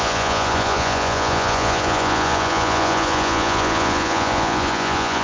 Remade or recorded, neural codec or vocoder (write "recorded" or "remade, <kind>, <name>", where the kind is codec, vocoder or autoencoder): remade, vocoder, Vocos